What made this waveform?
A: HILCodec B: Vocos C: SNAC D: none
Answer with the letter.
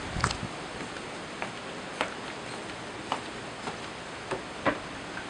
D